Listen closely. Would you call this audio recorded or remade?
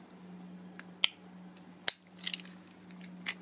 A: recorded